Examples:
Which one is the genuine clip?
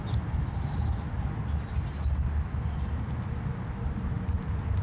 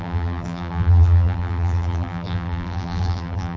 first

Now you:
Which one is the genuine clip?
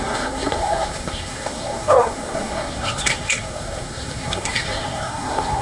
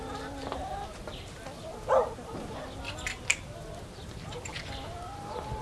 second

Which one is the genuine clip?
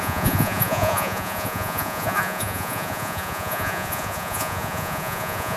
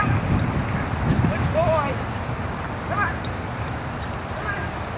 second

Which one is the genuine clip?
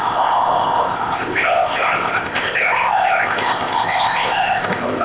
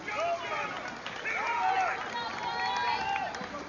second